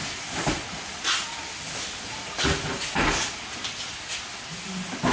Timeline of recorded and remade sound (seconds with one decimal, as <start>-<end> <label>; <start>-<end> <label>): 0.0-5.1 recorded